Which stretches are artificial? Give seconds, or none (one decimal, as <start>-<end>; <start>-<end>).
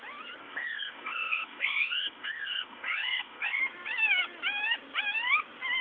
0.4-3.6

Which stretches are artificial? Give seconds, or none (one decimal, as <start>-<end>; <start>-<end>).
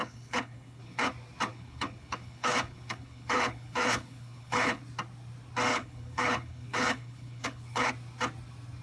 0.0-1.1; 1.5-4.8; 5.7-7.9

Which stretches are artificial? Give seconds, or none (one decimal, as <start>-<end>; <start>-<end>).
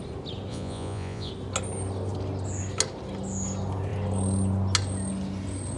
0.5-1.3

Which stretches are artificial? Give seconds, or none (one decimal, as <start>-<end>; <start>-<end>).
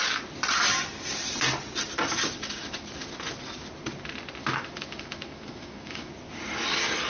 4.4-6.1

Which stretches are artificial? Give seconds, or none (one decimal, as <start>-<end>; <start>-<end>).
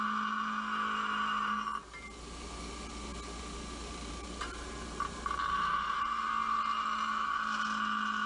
none